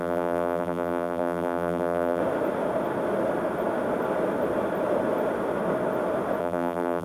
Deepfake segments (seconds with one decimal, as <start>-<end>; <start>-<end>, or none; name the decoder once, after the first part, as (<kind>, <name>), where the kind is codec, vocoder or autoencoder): 0.0-2.2 (vocoder, BigVGAN v2); 6.4-7.0